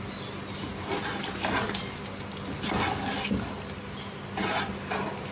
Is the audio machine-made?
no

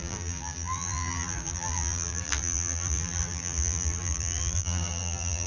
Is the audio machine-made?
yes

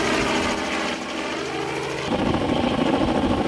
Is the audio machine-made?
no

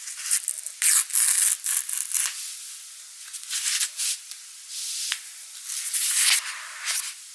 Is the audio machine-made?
no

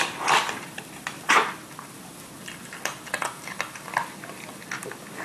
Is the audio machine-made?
yes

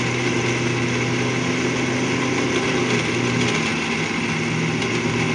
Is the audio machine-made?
no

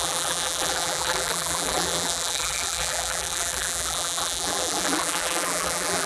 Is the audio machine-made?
yes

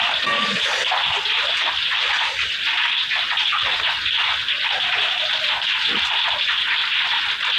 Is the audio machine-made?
no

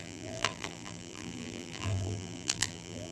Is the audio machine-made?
yes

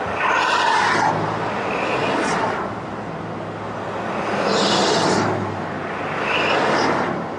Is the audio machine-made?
no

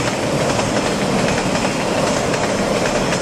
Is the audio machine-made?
no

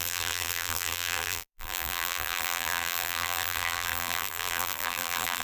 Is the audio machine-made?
yes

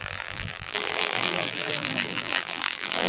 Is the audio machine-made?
yes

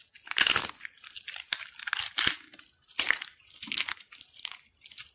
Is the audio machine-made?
no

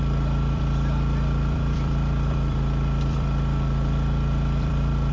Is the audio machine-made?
yes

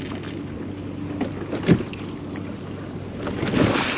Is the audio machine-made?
no